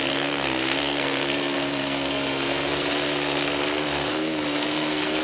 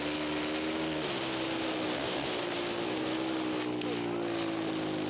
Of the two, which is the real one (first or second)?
second